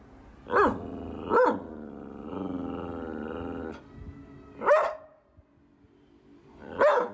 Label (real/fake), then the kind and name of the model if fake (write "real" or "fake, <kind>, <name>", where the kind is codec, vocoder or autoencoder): real